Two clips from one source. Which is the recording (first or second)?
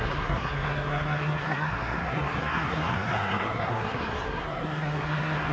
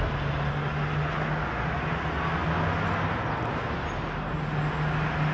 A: second